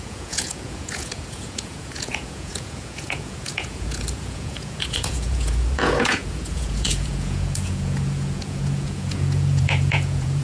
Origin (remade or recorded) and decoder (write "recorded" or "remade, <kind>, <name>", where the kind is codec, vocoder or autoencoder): remade, vocoder, Vocos